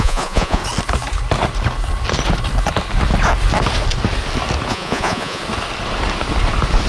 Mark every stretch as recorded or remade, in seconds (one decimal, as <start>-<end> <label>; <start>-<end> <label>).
0.0-0.6 remade; 0.6-4.7 recorded; 4.7-5.4 remade; 5.4-6.9 recorded